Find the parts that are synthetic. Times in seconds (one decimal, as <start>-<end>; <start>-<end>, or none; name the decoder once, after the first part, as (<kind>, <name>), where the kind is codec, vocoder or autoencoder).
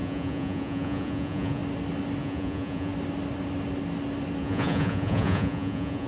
0.0-1.6 (vocoder, Vocos); 2.2-2.9; 4.4-6.1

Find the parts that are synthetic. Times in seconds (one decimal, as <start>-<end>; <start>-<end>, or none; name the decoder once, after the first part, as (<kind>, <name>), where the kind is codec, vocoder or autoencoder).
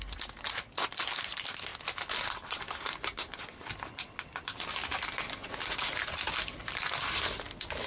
6.0-6.6 (vocoder, BigVGAN v2)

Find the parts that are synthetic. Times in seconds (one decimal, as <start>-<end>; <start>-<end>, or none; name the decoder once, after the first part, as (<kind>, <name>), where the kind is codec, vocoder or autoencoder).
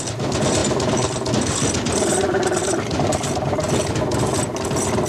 none